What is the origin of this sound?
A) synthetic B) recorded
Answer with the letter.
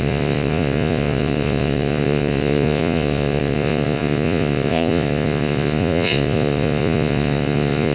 A